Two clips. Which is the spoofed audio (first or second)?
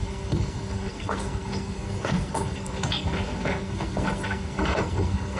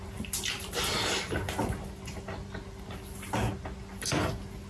first